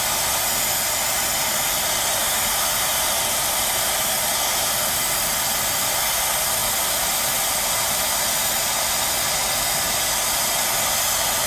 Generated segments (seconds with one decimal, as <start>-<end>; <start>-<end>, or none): 2.2-3.0